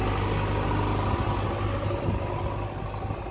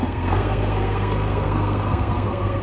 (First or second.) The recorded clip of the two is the first